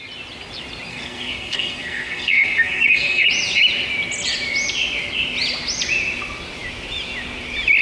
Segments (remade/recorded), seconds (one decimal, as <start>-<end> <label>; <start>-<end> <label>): 0.0-0.9 recorded; 0.9-3.3 remade; 3.3-7.8 recorded